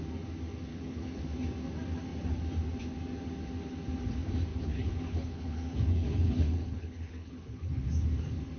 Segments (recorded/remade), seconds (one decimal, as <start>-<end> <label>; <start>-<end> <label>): 0.0-0.7 recorded; 0.7-1.2 remade; 1.2-4.5 recorded; 4.5-7.9 remade; 7.9-8.6 recorded